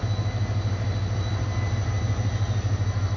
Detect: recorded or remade recorded